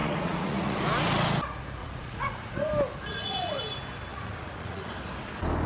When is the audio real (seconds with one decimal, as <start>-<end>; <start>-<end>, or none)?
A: 0.8-1.8; 2.7-3.1; 3.6-4.1; 4.9-5.7